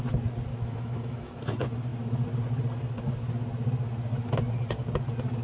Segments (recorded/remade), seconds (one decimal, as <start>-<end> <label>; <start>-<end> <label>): 0.0-0.5 recorded; 0.5-1.4 remade; 1.4-5.4 recorded